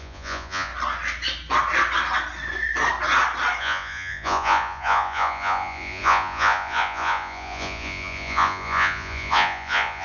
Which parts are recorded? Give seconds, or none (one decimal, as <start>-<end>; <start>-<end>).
0.7-3.6